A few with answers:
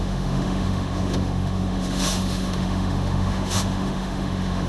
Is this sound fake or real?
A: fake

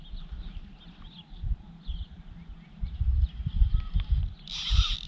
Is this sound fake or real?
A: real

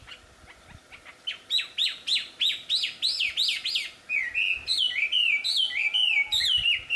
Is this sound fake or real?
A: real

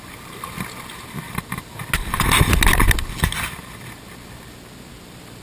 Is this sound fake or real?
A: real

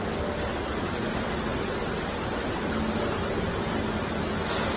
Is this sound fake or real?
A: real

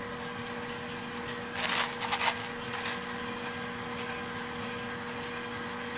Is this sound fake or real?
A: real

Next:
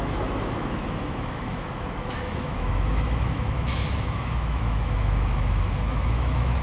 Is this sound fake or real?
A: fake